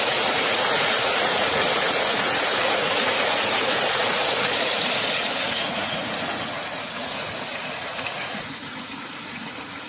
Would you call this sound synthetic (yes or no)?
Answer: yes